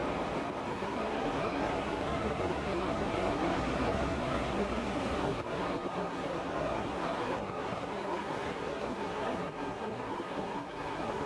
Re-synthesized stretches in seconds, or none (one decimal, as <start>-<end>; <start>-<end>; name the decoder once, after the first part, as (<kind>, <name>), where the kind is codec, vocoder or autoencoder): 0.7-11.3 (codec, SNAC)